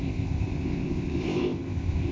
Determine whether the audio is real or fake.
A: fake